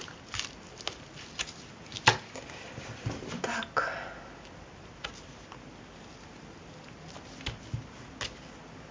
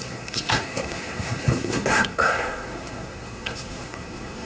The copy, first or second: second